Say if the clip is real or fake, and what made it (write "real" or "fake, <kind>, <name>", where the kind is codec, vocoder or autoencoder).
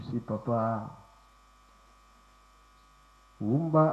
real